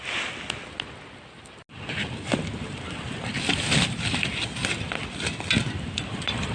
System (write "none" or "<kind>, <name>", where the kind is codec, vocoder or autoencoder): none